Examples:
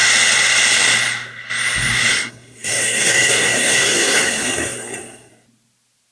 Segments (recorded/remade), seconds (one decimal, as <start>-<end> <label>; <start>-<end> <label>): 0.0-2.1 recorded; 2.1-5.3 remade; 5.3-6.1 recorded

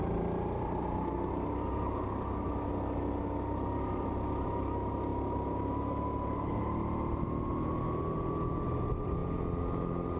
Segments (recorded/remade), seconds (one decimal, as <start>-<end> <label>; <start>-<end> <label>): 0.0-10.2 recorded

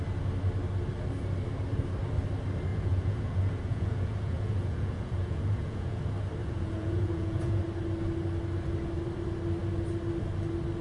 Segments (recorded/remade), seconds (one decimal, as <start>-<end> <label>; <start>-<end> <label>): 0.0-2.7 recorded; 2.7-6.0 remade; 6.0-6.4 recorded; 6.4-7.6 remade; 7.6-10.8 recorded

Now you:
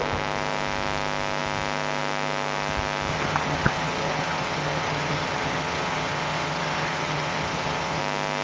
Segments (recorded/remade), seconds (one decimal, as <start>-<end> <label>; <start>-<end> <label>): 0.0-3.1 recorded; 3.1-8.0 remade; 8.0-8.4 recorded

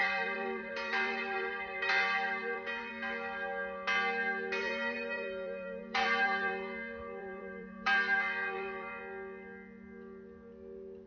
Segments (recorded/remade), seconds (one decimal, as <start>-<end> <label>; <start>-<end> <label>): 0.0-2.9 remade; 2.9-4.6 recorded; 4.6-9.0 remade; 9.0-11.1 recorded